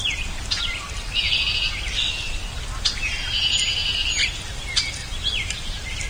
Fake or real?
real